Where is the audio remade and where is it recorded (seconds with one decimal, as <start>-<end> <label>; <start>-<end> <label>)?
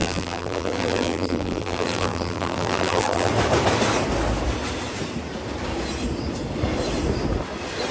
0.0-3.3 remade; 3.3-7.9 recorded